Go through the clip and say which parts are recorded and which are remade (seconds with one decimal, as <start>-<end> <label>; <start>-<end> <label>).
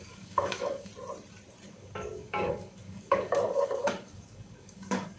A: 0.0-0.9 remade; 0.9-1.7 recorded; 1.7-5.2 remade